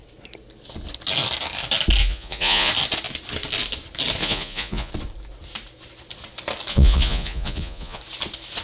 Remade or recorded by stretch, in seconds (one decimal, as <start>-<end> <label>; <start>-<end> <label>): 0.0-2.0 recorded; 2.0-2.7 remade; 2.7-4.2 recorded; 4.2-4.9 remade; 4.9-6.7 recorded; 6.7-8.0 remade; 8.0-8.6 recorded